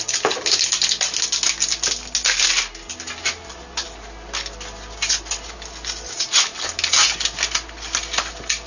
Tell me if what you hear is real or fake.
real